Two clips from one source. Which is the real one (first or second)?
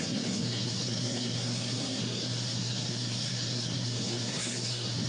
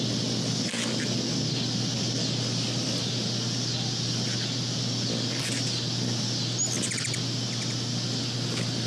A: second